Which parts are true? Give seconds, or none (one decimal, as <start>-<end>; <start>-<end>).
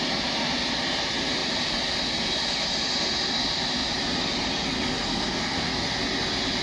0.0-5.1; 5.7-6.6